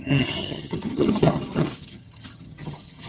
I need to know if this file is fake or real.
fake